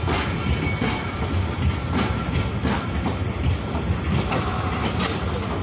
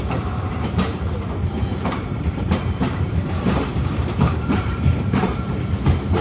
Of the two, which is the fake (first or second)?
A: second